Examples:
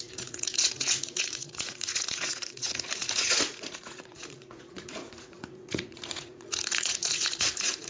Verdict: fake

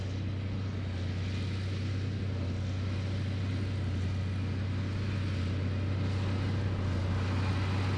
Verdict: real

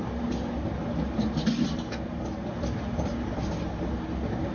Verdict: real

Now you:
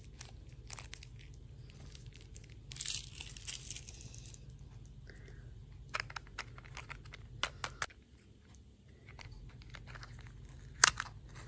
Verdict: real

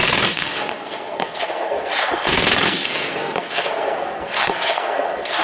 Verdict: fake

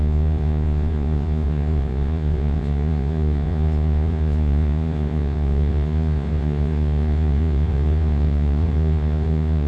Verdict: fake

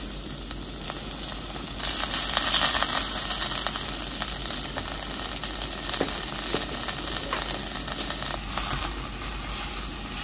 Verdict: real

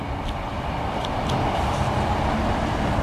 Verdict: real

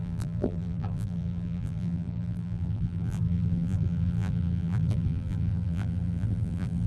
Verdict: fake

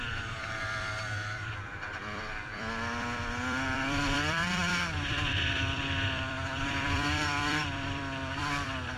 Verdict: fake